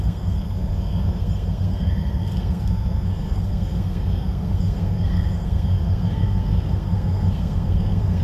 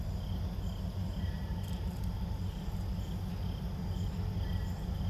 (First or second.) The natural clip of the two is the second